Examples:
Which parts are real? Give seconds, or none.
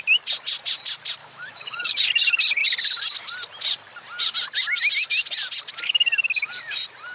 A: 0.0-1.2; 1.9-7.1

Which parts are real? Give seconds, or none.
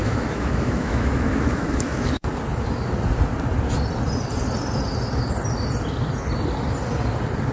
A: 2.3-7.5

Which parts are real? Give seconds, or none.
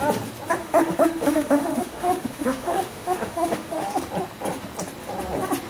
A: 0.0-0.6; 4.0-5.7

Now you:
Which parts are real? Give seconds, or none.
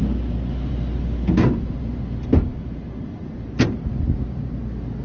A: 0.0-5.0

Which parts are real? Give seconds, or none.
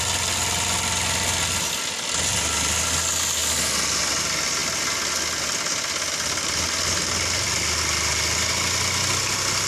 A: 0.0-9.7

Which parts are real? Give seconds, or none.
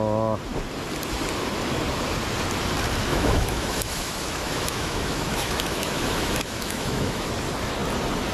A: 0.0-3.1; 7.3-8.3